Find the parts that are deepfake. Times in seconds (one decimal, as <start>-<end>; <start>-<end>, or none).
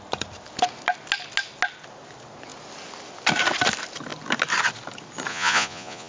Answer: 5.3-6.1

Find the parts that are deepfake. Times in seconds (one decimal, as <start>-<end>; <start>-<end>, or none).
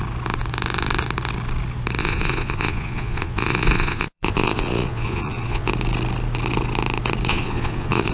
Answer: 2.0-5.7; 7.3-8.1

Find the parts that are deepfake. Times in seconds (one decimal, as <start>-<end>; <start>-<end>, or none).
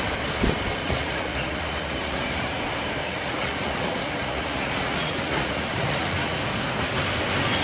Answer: 0.8-2.6; 3.0-6.4